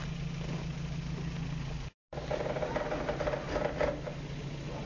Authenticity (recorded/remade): recorded